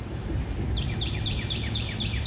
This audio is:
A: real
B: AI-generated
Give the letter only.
B